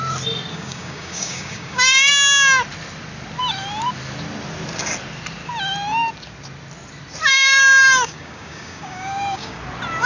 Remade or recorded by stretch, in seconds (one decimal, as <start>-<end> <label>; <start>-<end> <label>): 0.0-0.5 recorded; 0.5-2.1 remade; 2.1-7.3 recorded; 7.3-9.6 remade; 9.6-10.1 recorded